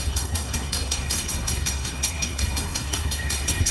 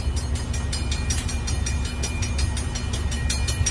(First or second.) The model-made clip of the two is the first